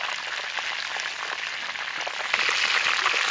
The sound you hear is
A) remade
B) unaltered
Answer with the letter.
B